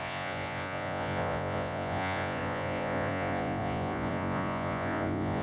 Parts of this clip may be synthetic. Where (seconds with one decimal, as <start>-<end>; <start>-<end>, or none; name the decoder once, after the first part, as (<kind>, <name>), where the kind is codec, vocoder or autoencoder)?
0.0-5.4 (vocoder, Vocos)